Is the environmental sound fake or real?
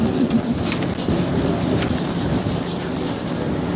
real